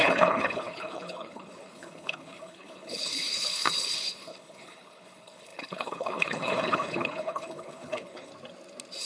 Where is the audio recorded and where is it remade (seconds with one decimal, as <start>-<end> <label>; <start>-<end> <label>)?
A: 0.0-8.3 remade; 8.3-9.0 recorded